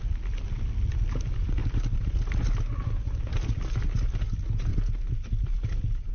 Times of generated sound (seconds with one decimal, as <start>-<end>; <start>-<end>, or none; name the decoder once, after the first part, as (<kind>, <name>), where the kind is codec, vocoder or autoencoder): 4.7-6.1 (vocoder, BigVGAN v2)